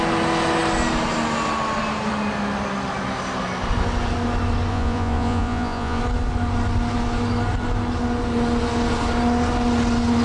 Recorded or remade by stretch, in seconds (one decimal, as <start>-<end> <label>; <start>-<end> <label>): 0.0-4.7 recorded; 4.7-6.0 remade; 6.0-10.2 recorded